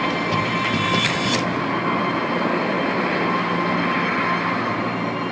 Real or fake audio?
real